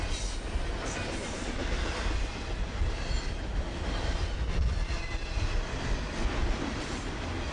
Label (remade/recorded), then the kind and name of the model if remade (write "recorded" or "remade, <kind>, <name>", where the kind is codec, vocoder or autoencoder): recorded